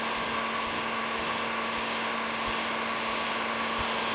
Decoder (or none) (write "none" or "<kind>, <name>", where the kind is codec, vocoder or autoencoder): none